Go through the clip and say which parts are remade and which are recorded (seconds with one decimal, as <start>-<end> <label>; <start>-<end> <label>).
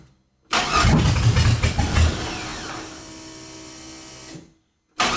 0.0-5.2 recorded